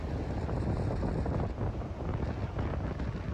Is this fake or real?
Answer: real